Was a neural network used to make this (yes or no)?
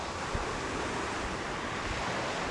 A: no